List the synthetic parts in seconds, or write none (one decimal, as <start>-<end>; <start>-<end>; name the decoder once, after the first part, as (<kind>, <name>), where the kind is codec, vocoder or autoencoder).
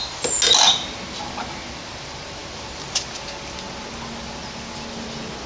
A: none